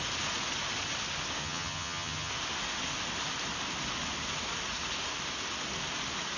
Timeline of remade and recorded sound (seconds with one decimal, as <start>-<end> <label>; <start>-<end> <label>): 0.0-1.4 recorded; 1.4-2.3 remade; 2.3-6.4 recorded